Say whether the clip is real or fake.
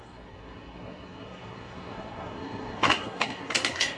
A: fake